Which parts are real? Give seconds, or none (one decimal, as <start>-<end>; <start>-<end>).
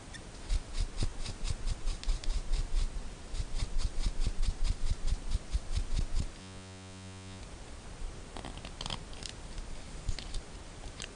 0.0-6.4; 7.4-11.2